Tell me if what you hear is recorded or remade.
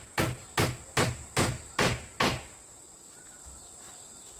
recorded